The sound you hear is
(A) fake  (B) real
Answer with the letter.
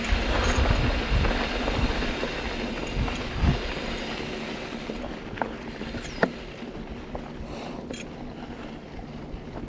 B